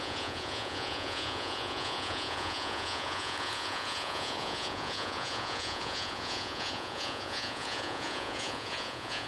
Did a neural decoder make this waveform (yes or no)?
yes